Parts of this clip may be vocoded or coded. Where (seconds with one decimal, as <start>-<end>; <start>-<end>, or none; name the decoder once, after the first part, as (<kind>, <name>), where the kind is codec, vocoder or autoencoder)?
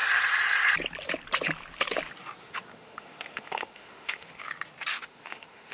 2.4-4.5 (autoencoder, DAC-VAE); 4.9-5.7